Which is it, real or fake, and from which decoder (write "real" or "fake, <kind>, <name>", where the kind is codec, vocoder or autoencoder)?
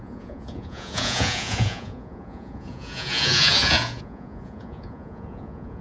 fake, vocoder, Vocos